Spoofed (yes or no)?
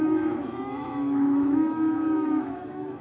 yes